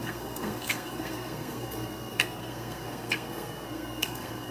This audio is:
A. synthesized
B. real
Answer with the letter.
A